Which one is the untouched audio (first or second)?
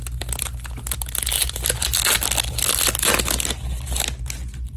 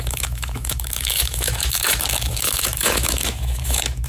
first